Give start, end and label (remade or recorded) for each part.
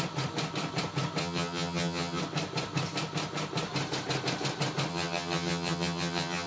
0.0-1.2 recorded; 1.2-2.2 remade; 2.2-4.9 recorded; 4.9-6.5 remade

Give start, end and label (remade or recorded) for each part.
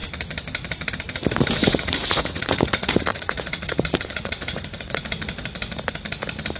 0.0-1.6 recorded; 1.6-5.0 remade; 5.0-6.6 recorded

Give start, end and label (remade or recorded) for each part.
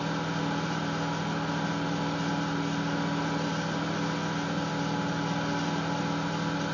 0.0-6.7 recorded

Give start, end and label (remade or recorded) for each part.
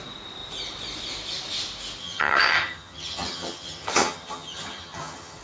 0.0-2.0 recorded; 2.0-5.4 remade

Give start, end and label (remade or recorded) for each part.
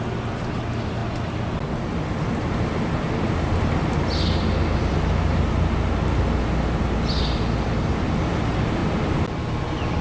0.0-10.0 recorded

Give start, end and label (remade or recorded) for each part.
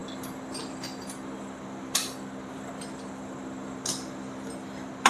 0.0-5.1 recorded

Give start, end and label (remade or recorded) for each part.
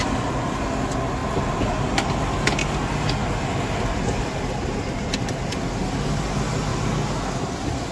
0.0-7.9 recorded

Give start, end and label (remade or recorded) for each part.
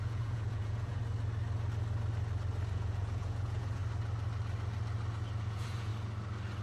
0.0-1.0 remade; 1.0-2.7 recorded; 2.7-3.8 remade; 3.8-5.4 recorded; 5.4-5.9 remade; 5.9-6.6 recorded